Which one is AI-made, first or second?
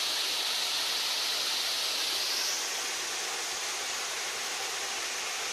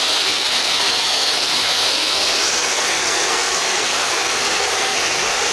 second